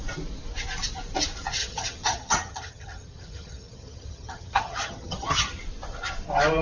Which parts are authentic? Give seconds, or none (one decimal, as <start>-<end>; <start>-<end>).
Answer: 0.0-1.6; 5.6-6.6

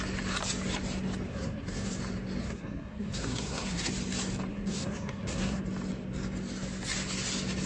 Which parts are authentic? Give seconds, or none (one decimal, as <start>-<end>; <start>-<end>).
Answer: 0.0-1.3; 1.9-2.4; 3.9-4.5; 5.6-7.7

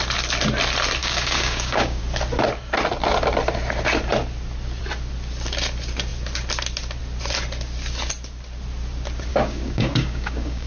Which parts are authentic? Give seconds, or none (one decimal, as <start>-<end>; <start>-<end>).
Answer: 0.0-1.0; 2.0-9.3

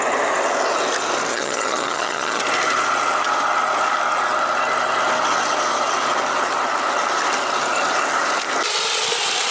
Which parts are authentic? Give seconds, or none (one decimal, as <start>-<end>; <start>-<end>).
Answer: 0.0-1.3; 2.4-9.5

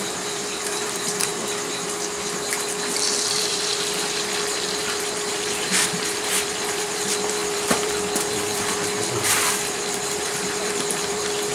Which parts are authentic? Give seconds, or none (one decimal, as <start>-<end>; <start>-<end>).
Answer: 1.3-2.9; 3.7-4.8

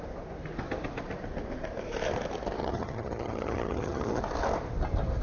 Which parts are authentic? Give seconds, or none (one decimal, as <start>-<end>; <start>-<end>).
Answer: 0.0-2.6; 4.2-5.2

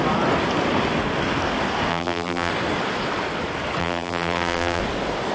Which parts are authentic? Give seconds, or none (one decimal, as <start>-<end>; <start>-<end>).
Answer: 0.0-1.9; 2.5-3.8; 4.8-5.3